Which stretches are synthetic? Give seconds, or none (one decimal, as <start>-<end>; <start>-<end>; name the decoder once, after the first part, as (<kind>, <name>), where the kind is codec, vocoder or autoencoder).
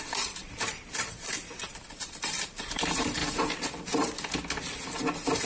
0.0-3.2 (vocoder, BigVGAN v2)